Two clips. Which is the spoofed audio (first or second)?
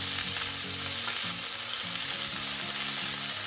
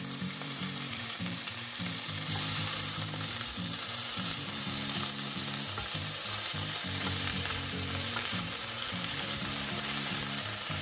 second